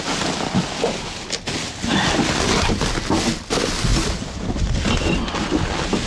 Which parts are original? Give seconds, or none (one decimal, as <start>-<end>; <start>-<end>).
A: 0.0-6.1